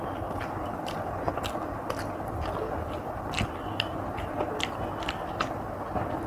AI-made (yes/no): no